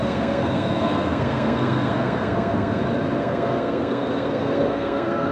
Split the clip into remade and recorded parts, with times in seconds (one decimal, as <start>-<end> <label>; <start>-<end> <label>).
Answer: 0.0-2.8 remade; 2.8-3.2 recorded; 3.2-5.3 remade